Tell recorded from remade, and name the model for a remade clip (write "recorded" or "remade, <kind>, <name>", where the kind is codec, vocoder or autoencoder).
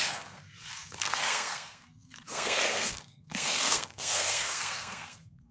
remade, codec, SNAC